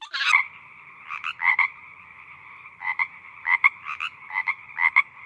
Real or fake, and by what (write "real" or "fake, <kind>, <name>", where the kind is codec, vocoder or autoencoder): fake, vocoder, BigVGAN v2